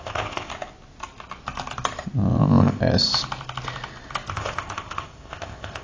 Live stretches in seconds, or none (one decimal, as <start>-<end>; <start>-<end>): 0.5-2.4; 2.8-4.3